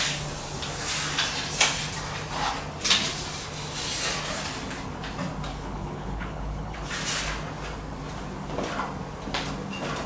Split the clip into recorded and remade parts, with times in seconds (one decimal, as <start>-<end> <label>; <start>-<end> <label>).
0.0-5.5 recorded; 5.5-6.8 remade; 6.8-10.1 recorded